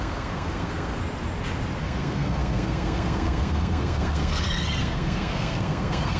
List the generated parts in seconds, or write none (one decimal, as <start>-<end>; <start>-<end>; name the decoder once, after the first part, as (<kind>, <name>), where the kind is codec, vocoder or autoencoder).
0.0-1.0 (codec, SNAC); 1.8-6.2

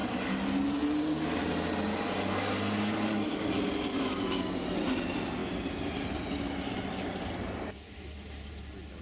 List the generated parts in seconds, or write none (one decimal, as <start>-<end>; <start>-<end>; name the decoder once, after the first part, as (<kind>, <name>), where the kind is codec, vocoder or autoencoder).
none

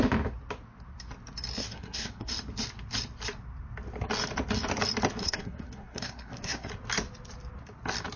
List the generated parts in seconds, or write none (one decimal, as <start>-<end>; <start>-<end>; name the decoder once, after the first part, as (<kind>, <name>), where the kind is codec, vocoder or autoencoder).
1.6-2.3 (codec, SNAC); 5.2-6.7

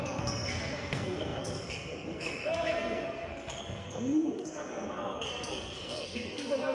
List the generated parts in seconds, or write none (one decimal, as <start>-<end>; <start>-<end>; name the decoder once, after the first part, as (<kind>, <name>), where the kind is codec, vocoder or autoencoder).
0.0-6.7 (codec, SNAC)